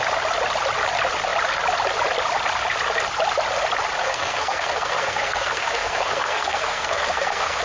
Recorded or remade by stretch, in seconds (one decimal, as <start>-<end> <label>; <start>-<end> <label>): 0.0-4.0 recorded; 4.0-7.6 remade